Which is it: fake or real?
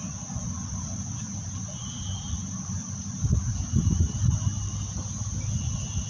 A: real